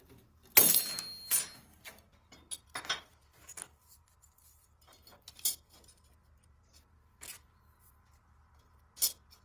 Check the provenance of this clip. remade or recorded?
recorded